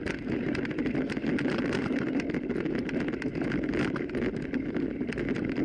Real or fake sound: real